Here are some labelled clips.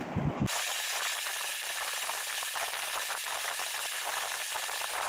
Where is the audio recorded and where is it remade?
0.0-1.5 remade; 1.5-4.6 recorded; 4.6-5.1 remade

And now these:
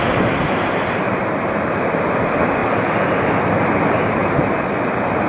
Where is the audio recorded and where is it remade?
0.0-2.6 remade; 2.6-3.5 recorded; 3.5-5.3 remade